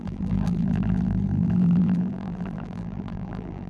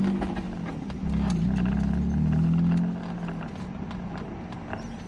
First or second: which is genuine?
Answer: second